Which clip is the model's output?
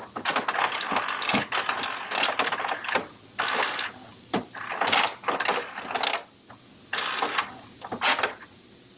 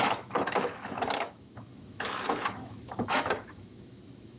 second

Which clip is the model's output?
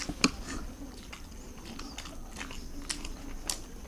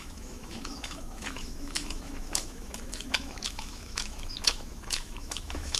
second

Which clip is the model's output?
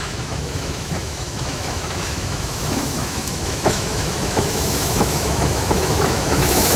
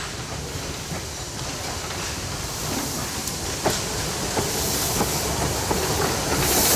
first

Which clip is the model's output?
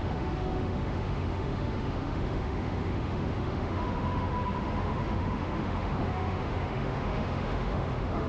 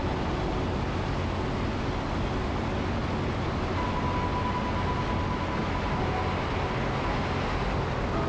first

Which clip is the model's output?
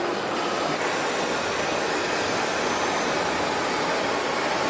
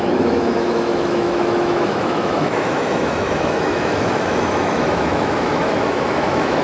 second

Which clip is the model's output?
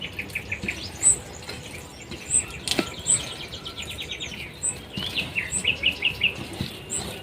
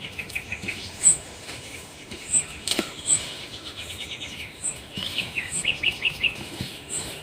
second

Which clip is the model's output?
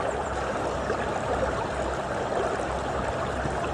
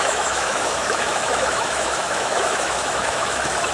second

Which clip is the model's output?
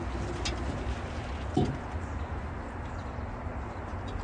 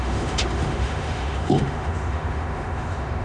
second